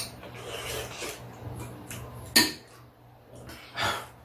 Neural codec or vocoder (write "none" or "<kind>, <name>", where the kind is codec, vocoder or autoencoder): none